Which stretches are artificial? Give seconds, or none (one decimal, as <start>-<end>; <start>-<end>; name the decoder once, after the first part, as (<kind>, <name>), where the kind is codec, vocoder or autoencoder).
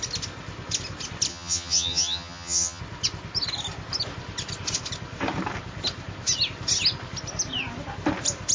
1.3-2.8 (vocoder, HiFi-GAN)